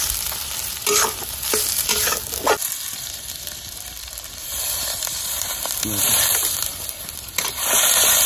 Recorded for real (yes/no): no